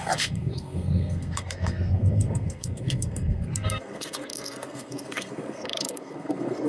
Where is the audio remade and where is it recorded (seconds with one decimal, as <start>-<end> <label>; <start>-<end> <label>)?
0.0-6.7 remade